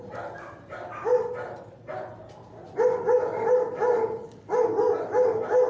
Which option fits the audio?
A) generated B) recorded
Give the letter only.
B